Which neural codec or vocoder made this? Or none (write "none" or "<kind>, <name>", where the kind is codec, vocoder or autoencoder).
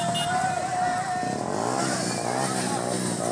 none